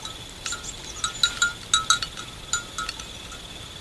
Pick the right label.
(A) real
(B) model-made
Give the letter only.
A